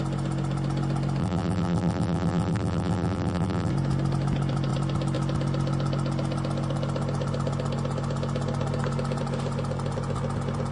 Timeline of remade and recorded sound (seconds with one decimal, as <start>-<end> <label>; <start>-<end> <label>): 0.0-1.2 recorded; 1.2-3.7 remade; 3.7-10.7 recorded